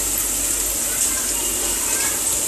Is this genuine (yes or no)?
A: yes